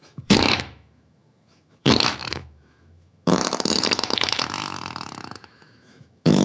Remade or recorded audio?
remade